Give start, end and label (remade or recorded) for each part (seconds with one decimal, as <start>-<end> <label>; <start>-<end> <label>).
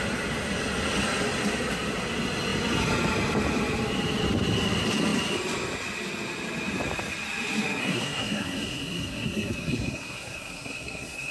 0.0-7.8 recorded; 7.8-11.3 remade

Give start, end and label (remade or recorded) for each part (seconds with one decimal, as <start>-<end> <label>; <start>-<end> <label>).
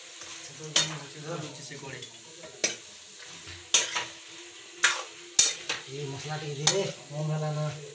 0.0-7.9 recorded